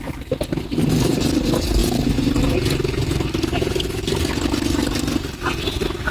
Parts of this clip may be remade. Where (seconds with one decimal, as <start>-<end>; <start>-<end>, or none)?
none